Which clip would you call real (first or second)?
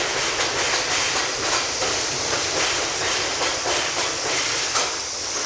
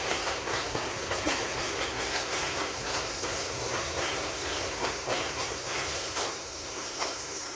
first